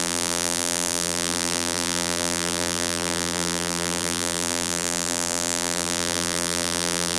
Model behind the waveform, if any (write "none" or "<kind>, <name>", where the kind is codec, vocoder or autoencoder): vocoder, BigVGAN v2